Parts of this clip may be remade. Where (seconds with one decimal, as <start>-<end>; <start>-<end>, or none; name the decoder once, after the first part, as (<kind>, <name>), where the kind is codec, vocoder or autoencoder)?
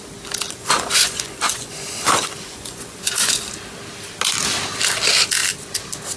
0.6-3.5 (vocoder, Vocos)